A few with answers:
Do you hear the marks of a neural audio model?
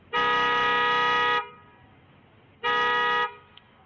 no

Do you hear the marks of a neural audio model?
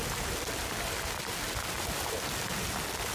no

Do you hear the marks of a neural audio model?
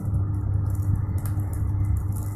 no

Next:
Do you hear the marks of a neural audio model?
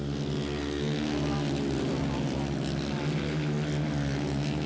no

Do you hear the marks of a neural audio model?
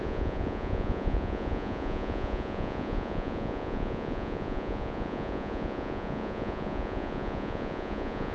yes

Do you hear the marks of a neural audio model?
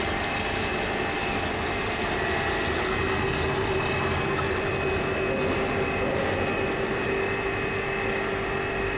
no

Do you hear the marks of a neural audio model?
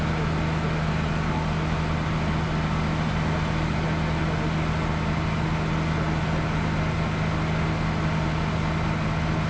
no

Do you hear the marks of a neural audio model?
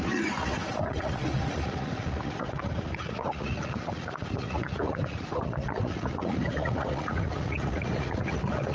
yes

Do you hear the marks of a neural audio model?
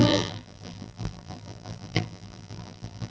yes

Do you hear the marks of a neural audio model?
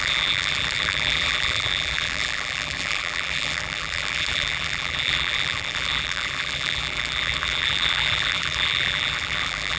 yes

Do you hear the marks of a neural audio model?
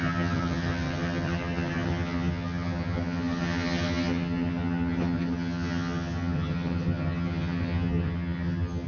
yes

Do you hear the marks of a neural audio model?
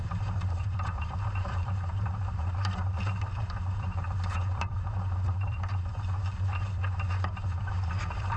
yes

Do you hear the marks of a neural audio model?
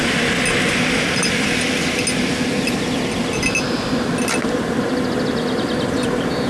no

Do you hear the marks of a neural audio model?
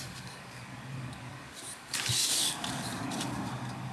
yes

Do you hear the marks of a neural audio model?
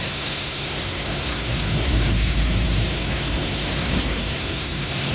yes